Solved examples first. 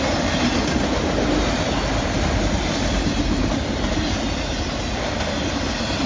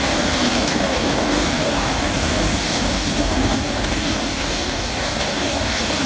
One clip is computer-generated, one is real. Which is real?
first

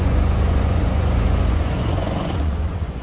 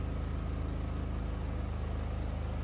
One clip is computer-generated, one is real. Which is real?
second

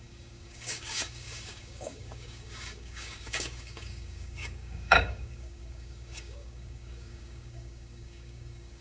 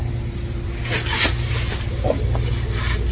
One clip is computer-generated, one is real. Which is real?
second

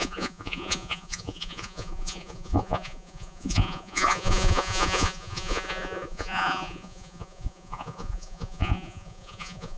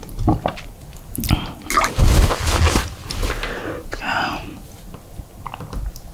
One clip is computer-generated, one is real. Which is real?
second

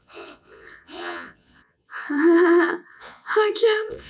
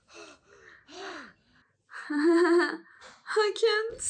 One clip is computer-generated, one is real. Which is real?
second